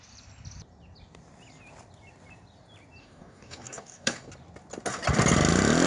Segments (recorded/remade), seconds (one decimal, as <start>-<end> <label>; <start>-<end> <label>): 0.0-3.0 recorded; 3.0-4.3 remade; 4.3-5.9 recorded